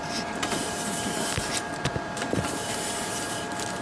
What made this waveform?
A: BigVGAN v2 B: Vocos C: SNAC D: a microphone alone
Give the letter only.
A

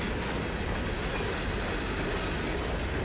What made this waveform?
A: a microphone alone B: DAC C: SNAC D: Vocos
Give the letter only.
A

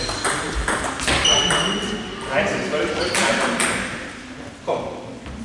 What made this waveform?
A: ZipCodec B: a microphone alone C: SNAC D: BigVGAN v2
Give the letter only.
B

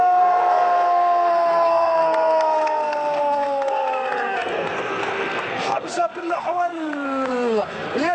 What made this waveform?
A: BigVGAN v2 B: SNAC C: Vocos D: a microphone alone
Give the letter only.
B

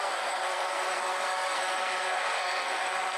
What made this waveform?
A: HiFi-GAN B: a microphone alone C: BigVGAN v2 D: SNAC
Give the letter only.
D